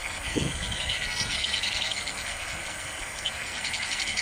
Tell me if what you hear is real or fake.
fake